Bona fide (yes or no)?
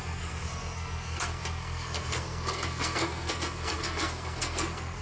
no